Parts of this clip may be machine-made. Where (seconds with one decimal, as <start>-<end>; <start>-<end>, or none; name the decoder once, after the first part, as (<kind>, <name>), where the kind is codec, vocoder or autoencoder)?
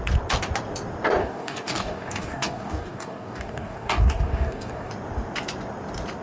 1.2-4.9 (codec, DAC)